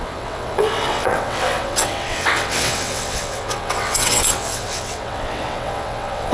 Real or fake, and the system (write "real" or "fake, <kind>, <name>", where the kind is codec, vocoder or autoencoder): fake, vocoder, WaveNeXt